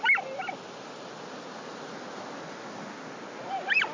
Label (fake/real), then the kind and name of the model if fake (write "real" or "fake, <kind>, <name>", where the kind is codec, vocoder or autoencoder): real